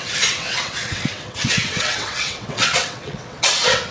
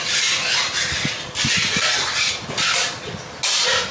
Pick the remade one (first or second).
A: first